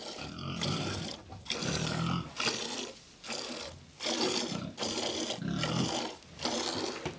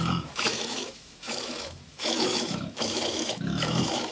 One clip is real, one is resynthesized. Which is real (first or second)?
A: first